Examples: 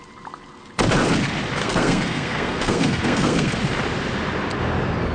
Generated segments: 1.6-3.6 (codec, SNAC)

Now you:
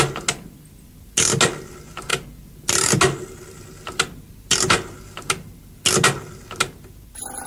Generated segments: none

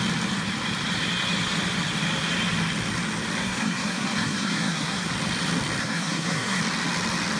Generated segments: 3.4-5.1 (codec, SNAC); 5.8-6.6

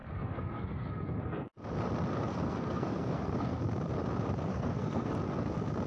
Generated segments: 0.0-1.5 (codec, SNAC); 2.3-3.6; 4.5-5.1

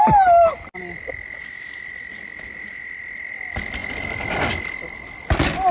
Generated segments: none

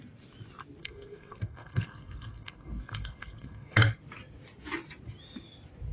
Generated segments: 0.8-4.0 (codec, SNAC)